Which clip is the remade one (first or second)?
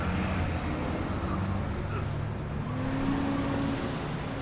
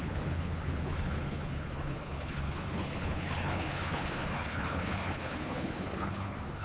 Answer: second